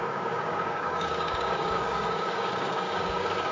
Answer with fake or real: fake